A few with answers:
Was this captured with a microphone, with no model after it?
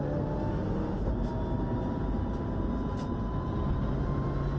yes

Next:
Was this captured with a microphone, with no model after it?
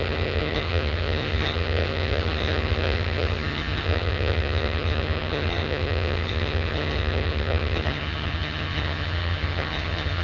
no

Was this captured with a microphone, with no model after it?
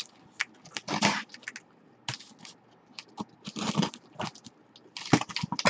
yes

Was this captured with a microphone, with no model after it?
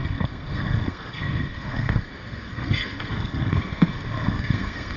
no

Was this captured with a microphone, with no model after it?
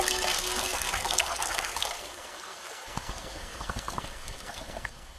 no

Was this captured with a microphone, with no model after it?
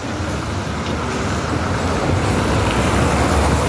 yes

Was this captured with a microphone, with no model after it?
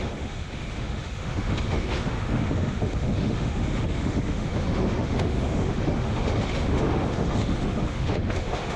no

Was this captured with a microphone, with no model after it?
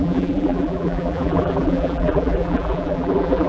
no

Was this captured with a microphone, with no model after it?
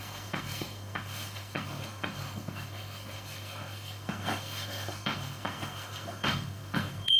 no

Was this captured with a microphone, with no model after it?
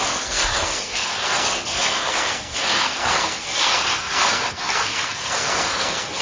no